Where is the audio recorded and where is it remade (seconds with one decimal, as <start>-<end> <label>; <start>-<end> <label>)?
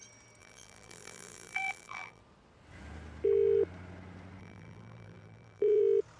0.0-0.4 recorded; 0.4-2.2 remade; 2.2-4.4 recorded; 4.4-5.8 remade; 5.8-6.2 recorded